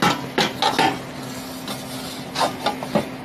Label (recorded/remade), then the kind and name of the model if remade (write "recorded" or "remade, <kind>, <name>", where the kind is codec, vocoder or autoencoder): recorded